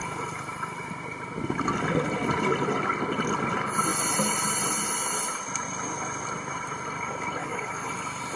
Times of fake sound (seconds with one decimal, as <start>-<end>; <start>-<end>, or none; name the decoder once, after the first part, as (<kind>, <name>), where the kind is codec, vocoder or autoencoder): 7.4-7.9 (codec, DAC)